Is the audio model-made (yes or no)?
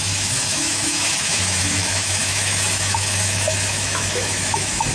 yes